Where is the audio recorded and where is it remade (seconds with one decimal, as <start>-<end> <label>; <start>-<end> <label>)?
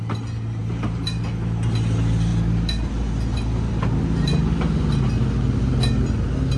0.0-0.6 recorded; 0.6-1.2 remade; 1.2-6.6 recorded